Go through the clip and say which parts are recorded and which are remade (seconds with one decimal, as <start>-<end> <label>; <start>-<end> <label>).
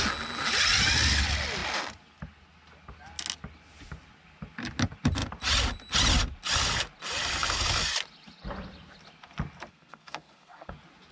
0.0-9.7 recorded; 9.7-10.7 remade; 10.7-11.1 recorded